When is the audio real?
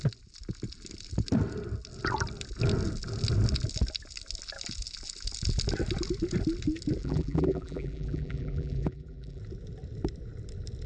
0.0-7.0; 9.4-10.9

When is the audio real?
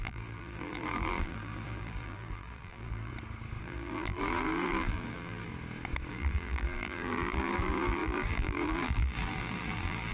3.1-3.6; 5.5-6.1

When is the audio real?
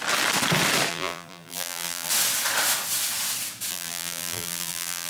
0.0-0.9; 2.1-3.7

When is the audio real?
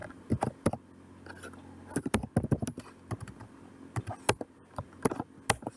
0.0-5.8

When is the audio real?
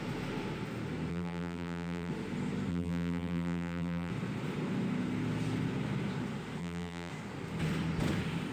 0.0-1.1; 2.1-2.7; 4.1-6.6; 7.1-8.5